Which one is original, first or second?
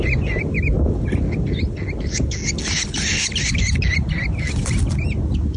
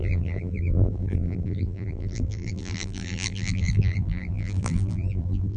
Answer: first